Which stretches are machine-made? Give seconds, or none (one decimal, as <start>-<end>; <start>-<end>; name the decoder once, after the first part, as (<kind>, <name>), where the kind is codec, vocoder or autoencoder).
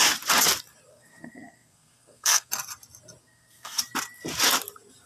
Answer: 0.9-2.5 (codec, SNAC); 3.2-3.8